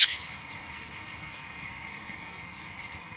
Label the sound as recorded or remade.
remade